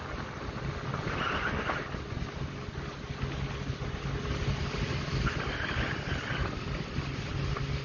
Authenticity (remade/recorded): recorded